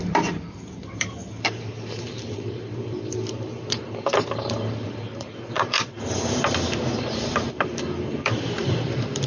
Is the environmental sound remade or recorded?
remade